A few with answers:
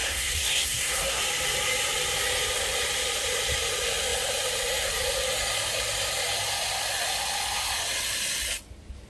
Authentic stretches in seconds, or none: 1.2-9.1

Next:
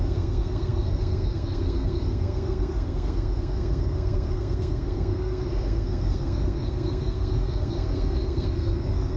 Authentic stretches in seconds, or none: none

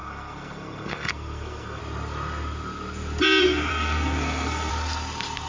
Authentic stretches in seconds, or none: 1.8-3.7; 4.7-5.5

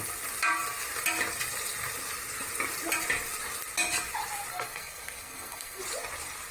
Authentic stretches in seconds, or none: 0.0-4.5; 5.8-6.5

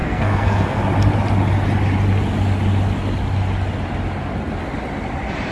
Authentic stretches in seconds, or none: 0.8-5.5

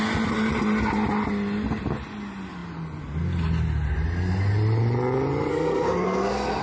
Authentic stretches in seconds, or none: 0.0-5.5